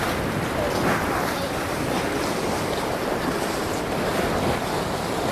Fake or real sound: real